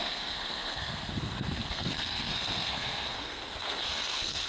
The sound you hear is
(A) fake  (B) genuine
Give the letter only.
A